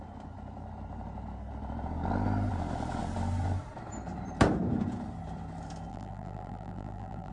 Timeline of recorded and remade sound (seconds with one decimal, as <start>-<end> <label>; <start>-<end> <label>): 0.0-5.9 recorded; 5.9-7.3 remade

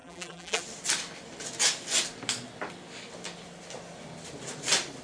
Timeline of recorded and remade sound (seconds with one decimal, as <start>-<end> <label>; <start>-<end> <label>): 0.0-0.6 remade; 0.6-5.0 recorded

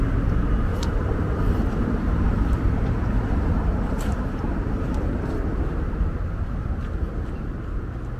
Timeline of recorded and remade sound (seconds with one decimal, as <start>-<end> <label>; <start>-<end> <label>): 0.0-0.7 recorded; 0.7-5.6 remade; 5.6-8.2 recorded

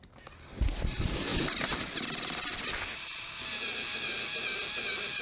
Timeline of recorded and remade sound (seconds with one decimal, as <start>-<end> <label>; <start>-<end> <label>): 0.0-5.2 recorded

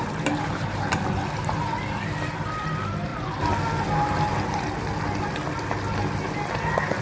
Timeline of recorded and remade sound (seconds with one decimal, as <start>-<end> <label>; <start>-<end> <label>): 0.0-7.0 recorded

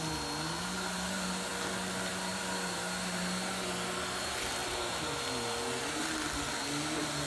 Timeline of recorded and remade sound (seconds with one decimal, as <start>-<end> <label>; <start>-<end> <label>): 0.0-7.3 recorded

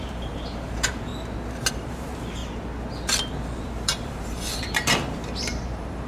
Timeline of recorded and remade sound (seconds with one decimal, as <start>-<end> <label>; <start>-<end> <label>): 0.0-1.1 remade; 1.1-1.7 recorded; 1.7-2.4 remade; 2.4-3.3 recorded; 3.3-6.1 remade

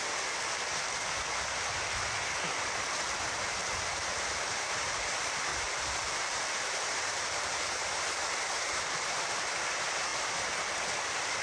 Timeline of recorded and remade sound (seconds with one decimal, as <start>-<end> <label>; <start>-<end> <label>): 0.0-3.6 recorded; 3.6-5.1 remade; 5.1-5.5 recorded; 5.5-9.2 remade; 9.2-11.4 recorded